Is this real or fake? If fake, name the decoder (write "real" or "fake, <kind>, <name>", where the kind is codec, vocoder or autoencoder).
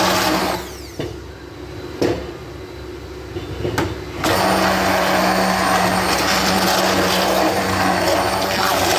real